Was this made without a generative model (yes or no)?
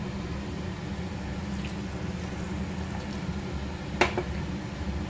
yes